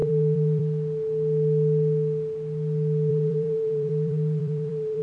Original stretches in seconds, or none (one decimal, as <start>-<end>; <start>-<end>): 0.6-3.1